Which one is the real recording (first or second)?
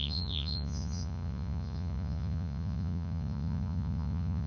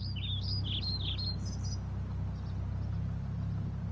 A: second